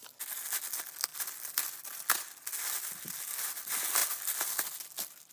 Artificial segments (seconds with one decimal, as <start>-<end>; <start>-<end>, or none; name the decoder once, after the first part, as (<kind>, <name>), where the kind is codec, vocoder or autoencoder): none